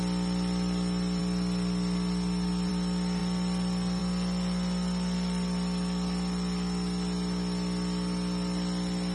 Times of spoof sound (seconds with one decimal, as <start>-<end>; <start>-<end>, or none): none